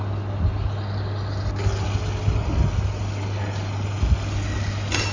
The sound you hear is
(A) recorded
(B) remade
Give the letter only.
A